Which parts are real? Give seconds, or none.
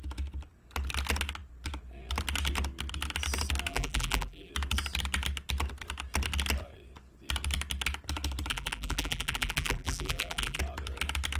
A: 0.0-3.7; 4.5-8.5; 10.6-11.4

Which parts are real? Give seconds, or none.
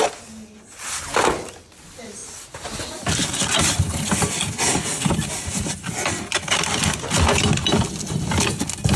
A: 0.0-9.0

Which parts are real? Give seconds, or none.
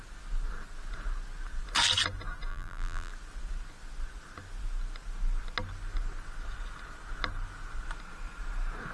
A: 0.0-2.5; 3.1-8.9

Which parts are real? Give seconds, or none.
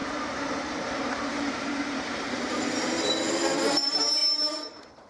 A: 3.1-4.2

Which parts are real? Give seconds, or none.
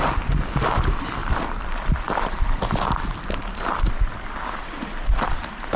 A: 0.0-1.2; 2.6-5.8